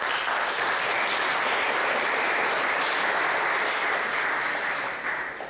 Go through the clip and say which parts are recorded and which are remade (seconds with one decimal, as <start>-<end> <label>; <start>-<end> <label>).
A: 0.0-5.5 recorded